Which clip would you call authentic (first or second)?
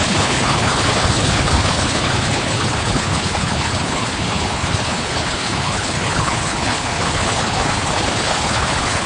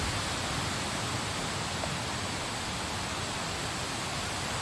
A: second